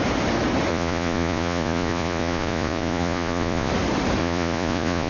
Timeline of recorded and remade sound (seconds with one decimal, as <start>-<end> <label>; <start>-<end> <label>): 0.0-0.7 recorded; 0.7-3.7 remade; 3.7-4.2 recorded; 4.2-5.1 remade